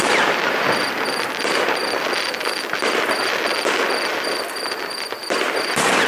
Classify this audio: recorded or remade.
recorded